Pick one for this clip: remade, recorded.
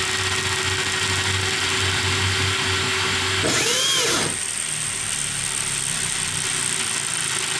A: recorded